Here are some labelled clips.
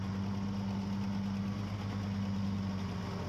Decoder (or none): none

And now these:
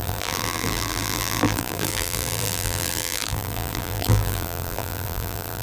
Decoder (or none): vocoder, BigVGAN v2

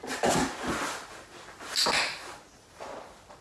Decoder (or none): none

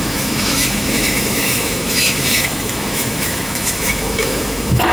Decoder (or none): autoencoder, DAC-VAE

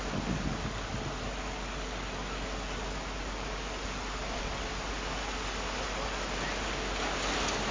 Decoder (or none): none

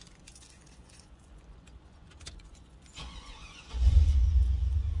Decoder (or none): vocoder, Vocos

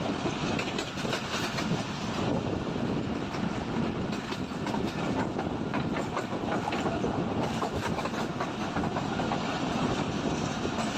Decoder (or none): none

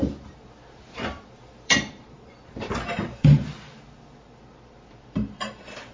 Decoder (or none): vocoder, BigVGAN v2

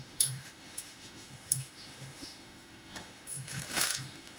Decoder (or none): autoencoder, DAC-VAE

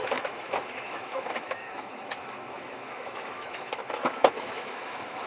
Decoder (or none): autoencoder, DAC-VAE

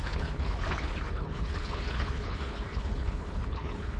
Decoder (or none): codec, HILCodec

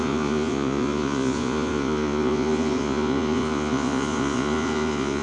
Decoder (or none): vocoder, Vocos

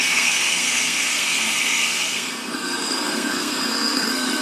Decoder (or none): codec, SNAC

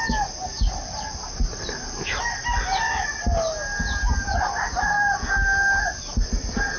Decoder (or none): none